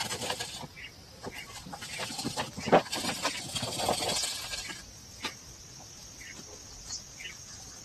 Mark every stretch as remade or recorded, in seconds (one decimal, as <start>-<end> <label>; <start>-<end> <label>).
0.0-7.8 recorded